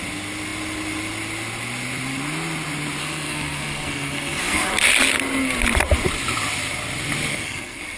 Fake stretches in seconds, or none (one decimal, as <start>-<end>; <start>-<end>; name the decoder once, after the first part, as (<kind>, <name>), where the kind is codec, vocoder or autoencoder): 3.0-4.7 (codec, SNAC); 7.3-8.0